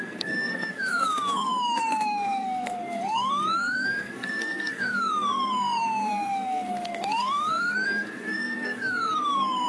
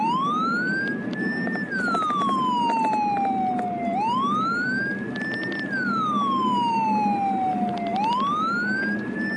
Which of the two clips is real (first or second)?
second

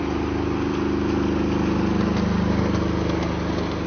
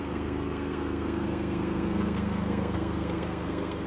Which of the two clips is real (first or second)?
first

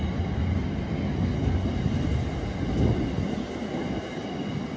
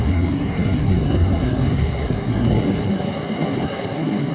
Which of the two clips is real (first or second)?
first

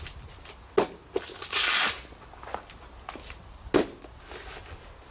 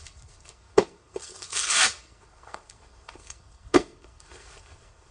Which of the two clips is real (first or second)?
first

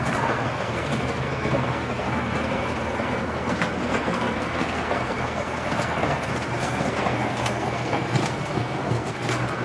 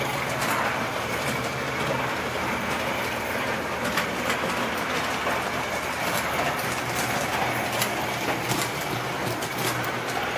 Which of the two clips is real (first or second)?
second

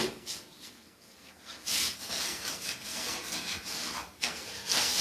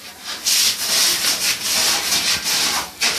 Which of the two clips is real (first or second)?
second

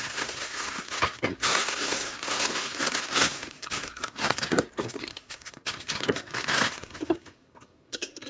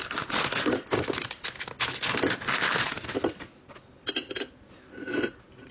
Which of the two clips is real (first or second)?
second